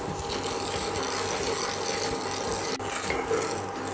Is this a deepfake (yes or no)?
no